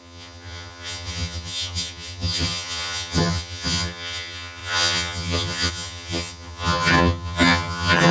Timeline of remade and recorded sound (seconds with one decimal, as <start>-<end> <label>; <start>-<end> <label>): 0.0-8.1 remade